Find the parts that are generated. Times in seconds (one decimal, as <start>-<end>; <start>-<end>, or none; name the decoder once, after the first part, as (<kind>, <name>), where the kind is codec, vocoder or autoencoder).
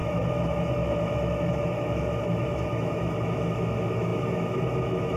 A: 0.0-5.2 (autoencoder, DAC-VAE)